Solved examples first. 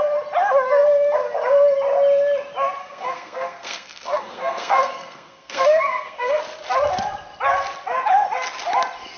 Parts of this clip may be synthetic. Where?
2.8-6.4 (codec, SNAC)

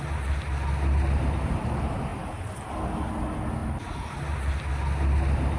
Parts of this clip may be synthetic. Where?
none

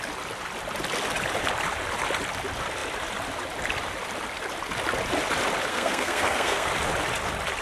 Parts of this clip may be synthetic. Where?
5.7-6.7 (codec, SNAC)

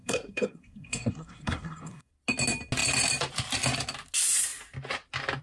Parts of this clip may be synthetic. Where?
0.0-2.1 (codec, SNAC)

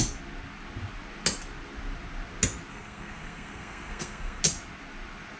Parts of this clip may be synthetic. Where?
2.7-4.4 (codec, SNAC)

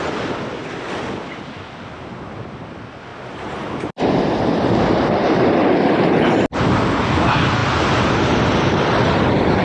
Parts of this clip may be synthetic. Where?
none

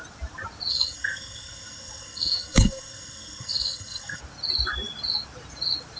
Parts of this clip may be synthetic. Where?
0.7-4.2 (codec, SNAC)